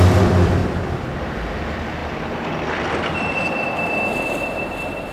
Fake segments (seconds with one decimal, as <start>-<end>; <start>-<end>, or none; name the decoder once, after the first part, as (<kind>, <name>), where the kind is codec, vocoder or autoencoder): 0.0-0.6 (vocoder, BigVGAN v2); 1.2-5.1